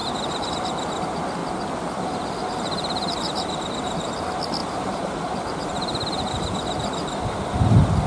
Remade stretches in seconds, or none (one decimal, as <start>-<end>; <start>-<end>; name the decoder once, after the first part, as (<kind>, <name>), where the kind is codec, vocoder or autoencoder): 1.4-4.1 (vocoder, BigVGAN v2); 4.6-7.3